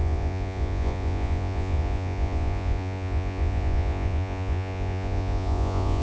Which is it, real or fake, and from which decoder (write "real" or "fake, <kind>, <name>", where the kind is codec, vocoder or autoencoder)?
fake, vocoder, Vocos